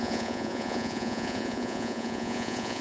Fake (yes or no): yes